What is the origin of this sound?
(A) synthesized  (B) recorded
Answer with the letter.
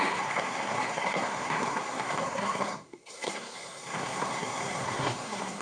A